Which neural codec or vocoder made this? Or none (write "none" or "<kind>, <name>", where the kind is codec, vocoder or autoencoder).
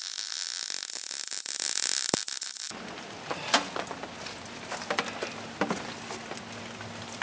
none